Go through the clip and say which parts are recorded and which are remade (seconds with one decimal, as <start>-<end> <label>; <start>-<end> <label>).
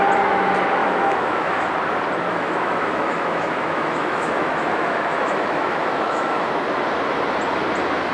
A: 0.0-0.8 recorded; 0.8-1.7 remade; 1.7-2.3 recorded; 2.3-6.5 remade; 6.5-8.1 recorded